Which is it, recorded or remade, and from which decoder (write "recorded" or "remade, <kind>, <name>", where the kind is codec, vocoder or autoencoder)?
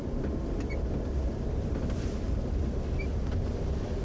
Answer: recorded